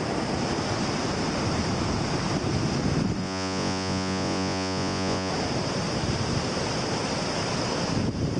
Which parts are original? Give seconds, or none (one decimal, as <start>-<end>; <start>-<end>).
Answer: 0.0-3.2; 5.3-8.4